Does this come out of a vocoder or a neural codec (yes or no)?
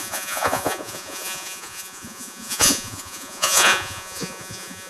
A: yes